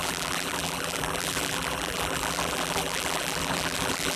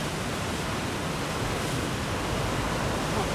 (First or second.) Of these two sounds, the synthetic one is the first